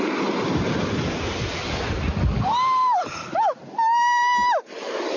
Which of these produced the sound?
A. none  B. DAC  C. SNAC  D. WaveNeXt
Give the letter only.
A